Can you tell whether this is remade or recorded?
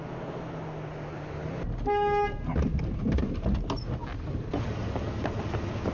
recorded